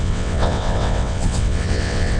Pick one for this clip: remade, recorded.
remade